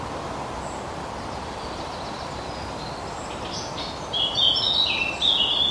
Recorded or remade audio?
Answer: recorded